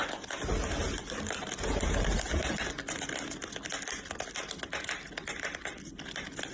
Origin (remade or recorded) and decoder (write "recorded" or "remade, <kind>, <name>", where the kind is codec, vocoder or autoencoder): recorded